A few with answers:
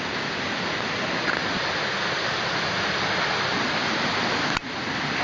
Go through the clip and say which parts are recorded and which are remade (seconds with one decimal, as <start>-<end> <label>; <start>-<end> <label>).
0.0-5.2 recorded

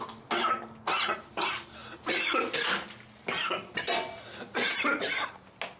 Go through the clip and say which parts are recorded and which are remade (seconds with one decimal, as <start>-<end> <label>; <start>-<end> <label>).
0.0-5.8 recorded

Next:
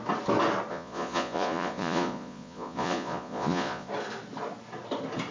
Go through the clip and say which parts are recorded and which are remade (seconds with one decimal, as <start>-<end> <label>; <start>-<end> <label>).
0.0-0.7 recorded; 0.7-3.9 remade; 3.9-5.3 recorded

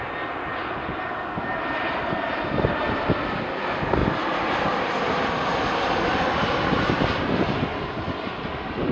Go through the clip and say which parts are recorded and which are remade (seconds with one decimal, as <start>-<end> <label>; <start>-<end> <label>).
0.0-4.0 recorded; 4.0-6.8 remade; 6.8-8.9 recorded

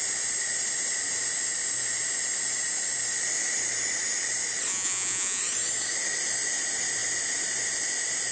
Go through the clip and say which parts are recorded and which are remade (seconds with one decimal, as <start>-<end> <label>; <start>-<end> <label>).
0.0-4.7 recorded; 4.7-5.4 remade; 5.4-8.3 recorded

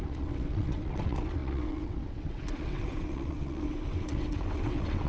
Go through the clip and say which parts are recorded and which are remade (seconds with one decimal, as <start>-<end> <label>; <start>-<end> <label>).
0.0-5.1 remade

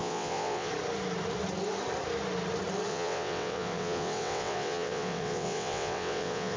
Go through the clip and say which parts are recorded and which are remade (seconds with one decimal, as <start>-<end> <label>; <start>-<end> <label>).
0.0-0.7 remade; 0.7-2.9 recorded; 2.9-6.6 remade

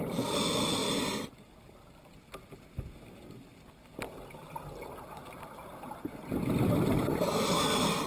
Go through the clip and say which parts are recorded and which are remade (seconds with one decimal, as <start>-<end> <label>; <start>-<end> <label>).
0.0-8.1 recorded